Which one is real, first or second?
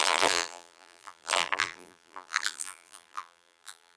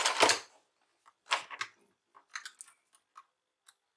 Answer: second